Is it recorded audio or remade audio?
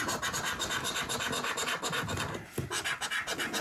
recorded